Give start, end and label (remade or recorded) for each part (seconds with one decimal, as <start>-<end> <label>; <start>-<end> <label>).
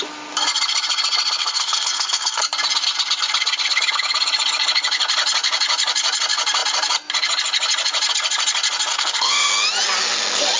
0.0-1.4 recorded; 1.4-2.4 remade; 2.4-8.9 recorded; 8.9-9.5 remade; 9.5-10.6 recorded